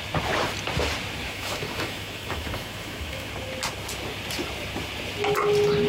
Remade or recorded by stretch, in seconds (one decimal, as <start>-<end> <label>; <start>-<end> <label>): 0.0-1.2 recorded; 1.2-3.3 remade; 3.3-5.9 recorded